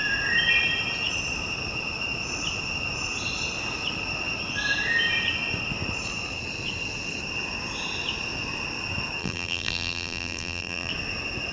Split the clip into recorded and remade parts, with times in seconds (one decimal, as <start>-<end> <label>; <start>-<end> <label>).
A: 0.0-9.2 recorded; 9.2-10.9 remade; 10.9-11.5 recorded